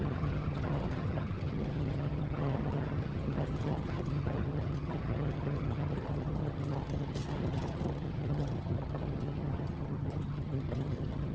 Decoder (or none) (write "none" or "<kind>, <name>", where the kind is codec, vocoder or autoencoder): vocoder, HiFi-GAN